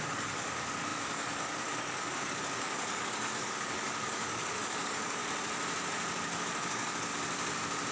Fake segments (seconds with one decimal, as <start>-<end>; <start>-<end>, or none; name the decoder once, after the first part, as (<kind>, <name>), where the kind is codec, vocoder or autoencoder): 0.0-5.2 (codec, DAC); 6.4-7.1